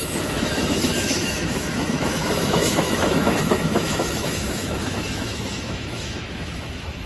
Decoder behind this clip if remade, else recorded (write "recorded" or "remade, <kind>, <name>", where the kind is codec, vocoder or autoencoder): remade, autoencoder, DAC-VAE